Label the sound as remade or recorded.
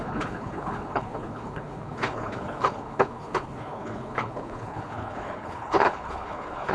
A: remade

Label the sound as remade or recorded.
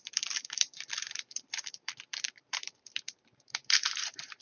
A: remade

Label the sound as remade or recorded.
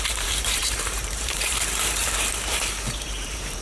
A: remade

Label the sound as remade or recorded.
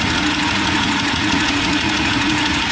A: remade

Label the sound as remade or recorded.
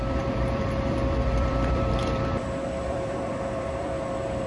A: remade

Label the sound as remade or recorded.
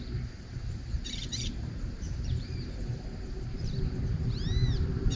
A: remade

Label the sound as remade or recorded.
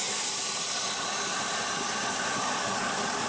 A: recorded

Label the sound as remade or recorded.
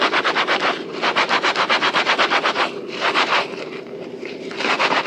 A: remade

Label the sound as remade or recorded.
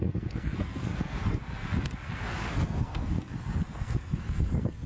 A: remade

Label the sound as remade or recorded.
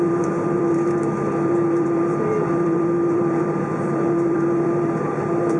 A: remade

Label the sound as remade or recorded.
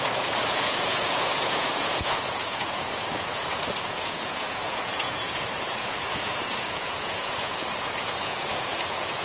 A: remade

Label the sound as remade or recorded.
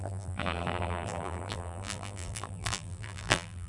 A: remade